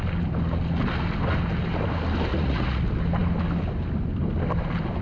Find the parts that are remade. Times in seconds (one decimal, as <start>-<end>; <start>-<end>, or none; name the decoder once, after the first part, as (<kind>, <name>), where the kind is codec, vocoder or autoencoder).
2.3-2.8 (vocoder, Vocos)